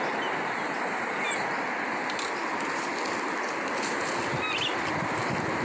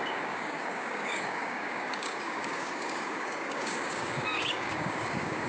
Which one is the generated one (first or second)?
second